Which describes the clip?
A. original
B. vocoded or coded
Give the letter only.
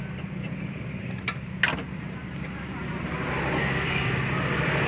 A